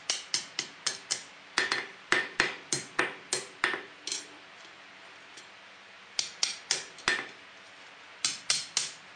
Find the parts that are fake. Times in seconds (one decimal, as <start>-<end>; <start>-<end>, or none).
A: 1.2-3.0